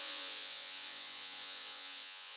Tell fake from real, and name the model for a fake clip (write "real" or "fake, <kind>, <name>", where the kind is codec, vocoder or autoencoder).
fake, vocoder, Vocos